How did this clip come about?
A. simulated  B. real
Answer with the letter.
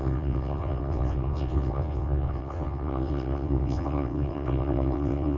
A